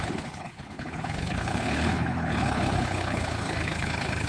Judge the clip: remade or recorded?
remade